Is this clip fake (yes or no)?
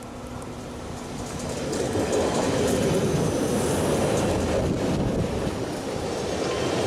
no